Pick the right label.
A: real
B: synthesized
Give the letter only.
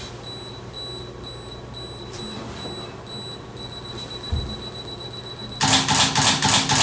A